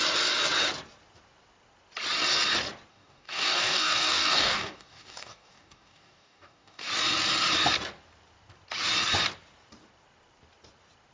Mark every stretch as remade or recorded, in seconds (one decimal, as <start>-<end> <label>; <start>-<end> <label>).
0.0-2.9 recorded; 2.9-6.9 remade; 6.9-11.1 recorded